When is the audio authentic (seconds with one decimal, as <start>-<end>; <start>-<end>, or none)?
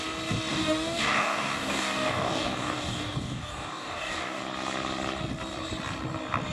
0.0-0.5; 4.4-6.5